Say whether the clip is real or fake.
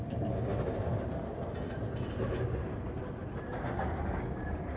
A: real